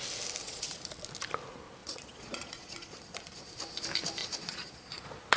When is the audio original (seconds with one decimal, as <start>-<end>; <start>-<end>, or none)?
0.0-0.4; 0.9-1.8; 3.5-4.2